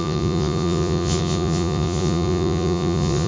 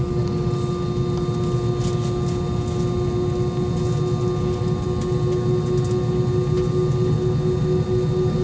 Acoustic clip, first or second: second